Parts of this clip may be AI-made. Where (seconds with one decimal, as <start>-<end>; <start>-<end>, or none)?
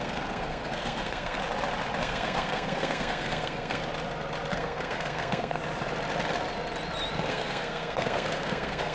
0.0-1.4; 2.0-3.8; 4.5-5.6; 7.3-8.9